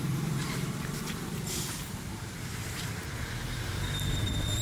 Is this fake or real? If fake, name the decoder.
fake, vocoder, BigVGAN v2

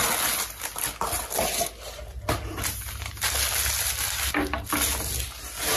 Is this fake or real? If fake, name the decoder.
real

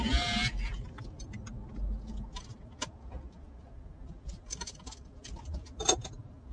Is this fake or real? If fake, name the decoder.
real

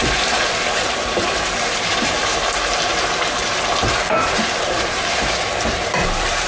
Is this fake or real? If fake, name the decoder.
fake, vocoder, BigVGAN v2